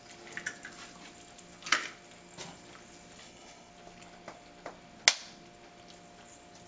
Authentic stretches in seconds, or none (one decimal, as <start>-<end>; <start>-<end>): 0.0-3.2; 3.7-6.7

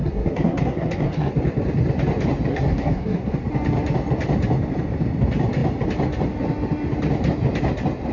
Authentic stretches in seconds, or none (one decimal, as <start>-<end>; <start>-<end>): 1.3-2.5; 3.3-8.1